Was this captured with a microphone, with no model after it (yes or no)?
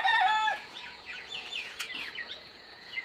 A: no